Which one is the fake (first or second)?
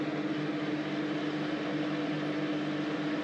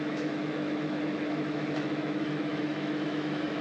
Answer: second